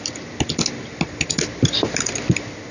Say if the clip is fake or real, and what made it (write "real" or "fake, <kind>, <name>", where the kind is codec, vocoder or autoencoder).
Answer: real